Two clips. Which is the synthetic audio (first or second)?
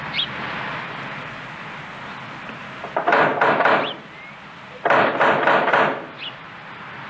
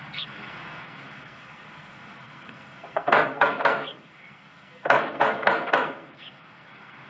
second